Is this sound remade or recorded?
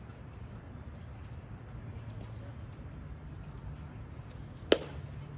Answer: recorded